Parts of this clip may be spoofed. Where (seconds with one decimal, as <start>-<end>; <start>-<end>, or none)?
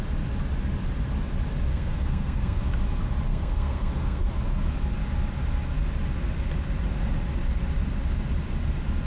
1.7-2.6; 3.3-4.2